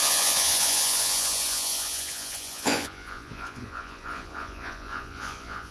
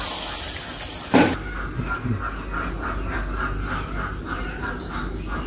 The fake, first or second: first